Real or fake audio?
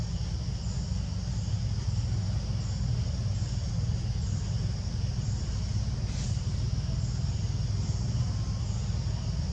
real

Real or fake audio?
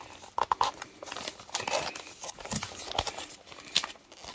real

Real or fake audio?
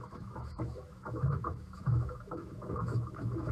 fake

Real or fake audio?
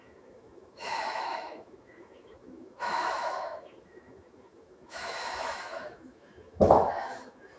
fake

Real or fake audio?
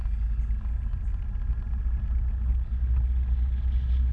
real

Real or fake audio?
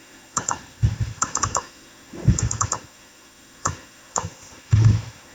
fake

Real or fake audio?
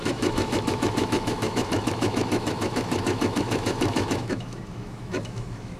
fake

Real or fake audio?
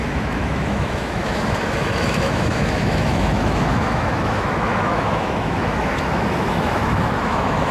fake